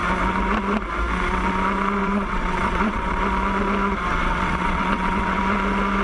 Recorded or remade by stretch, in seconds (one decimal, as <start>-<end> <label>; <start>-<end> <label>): 0.0-2.0 recorded; 2.0-3.2 remade; 3.2-4.1 recorded; 4.1-5.4 remade; 5.4-6.0 recorded